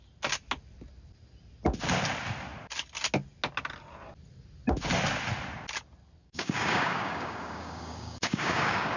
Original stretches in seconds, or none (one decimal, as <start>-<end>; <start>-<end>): 0.0-6.2